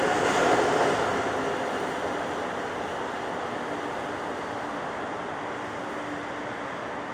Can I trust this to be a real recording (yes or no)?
yes